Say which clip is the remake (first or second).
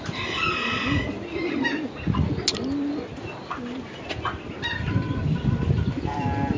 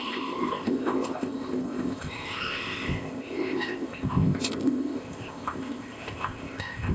second